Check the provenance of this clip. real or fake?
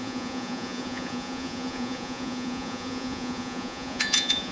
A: fake